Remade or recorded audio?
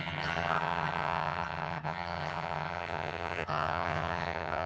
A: remade